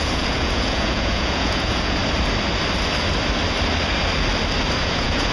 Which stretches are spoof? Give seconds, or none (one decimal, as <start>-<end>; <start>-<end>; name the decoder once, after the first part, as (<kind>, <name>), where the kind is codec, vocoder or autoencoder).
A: 0.0-2.0 (vocoder, Vocos); 4.8-5.3